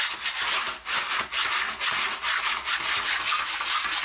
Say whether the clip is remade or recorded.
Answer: recorded